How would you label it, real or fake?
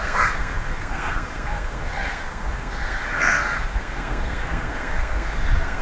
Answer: fake